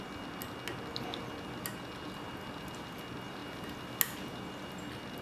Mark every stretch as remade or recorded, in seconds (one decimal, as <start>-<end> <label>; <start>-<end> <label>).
0.0-5.2 recorded